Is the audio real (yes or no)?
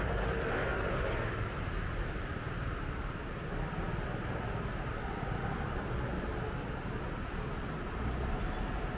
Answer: yes